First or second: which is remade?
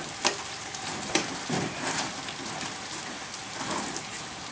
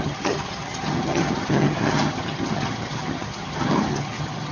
second